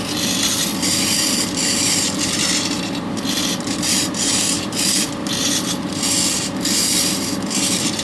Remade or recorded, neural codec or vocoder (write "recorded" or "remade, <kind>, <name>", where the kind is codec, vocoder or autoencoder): remade, vocoder, BigVGAN v2